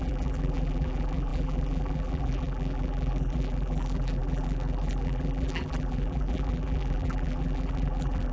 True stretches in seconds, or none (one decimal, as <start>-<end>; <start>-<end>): none